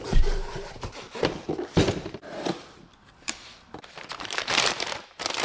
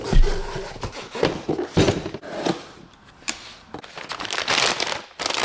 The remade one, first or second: first